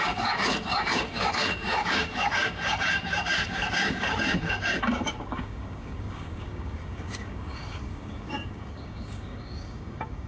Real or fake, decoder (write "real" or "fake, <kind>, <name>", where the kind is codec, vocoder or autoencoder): fake, codec, DAC